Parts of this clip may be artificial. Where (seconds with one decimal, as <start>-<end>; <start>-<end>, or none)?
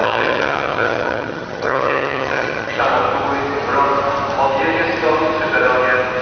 0.0-2.8